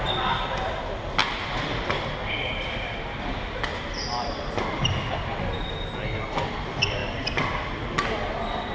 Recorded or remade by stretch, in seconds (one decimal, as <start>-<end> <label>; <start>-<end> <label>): 0.0-3.7 recorded; 3.7-4.5 remade; 4.5-7.0 recorded; 7.0-7.8 remade; 7.8-8.7 recorded